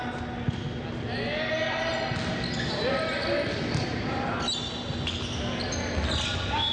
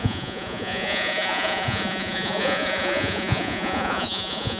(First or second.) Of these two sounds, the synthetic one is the second